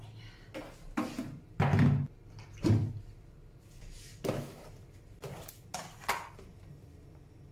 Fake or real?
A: real